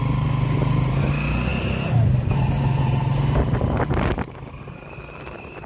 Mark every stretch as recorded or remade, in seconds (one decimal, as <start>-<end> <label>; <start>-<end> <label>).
0.0-5.7 recorded